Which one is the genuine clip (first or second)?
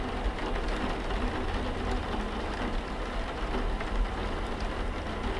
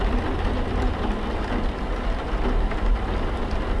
first